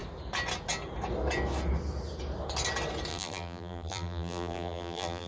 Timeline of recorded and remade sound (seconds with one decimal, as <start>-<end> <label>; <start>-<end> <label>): 0.0-3.1 recorded; 3.1-5.3 remade